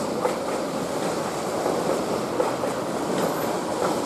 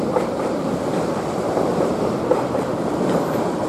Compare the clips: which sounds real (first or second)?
first